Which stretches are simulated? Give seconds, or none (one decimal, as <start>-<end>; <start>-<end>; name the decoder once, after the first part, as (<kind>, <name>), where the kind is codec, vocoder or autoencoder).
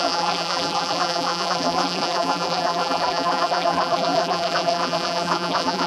0.0-5.9 (vocoder, BigVGAN v2)